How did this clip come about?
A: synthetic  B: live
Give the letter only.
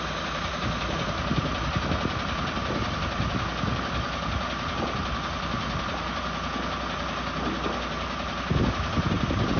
B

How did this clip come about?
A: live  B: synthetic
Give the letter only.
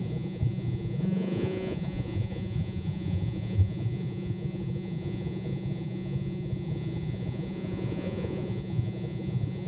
B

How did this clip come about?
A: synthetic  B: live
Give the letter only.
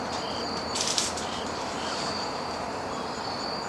A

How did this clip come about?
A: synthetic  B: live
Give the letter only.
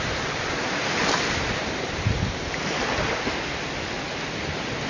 B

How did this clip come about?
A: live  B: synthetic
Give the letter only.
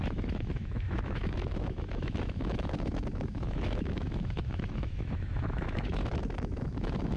B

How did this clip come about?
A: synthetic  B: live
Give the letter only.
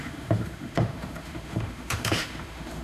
A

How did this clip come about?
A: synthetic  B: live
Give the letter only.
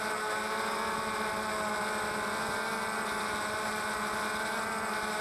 B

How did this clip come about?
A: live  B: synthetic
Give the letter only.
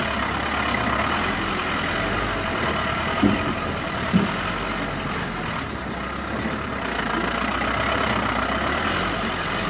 A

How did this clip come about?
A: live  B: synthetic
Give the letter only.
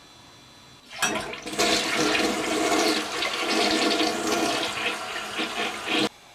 A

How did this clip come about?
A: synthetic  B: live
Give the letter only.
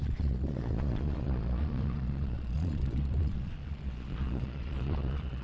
A